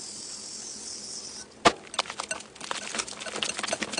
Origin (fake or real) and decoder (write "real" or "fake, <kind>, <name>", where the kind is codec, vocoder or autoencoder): real